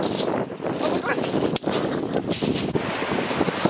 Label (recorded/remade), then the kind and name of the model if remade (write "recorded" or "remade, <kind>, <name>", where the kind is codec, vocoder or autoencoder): recorded